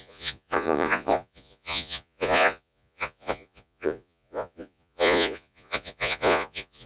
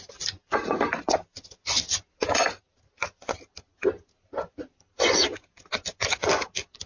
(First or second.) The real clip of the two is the second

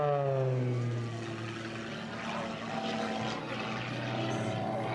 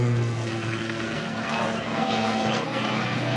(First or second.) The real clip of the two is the first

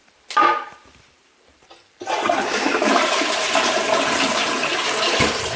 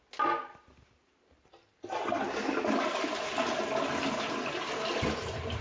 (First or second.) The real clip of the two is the second